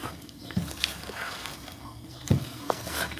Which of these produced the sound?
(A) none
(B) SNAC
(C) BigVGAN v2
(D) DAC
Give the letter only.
B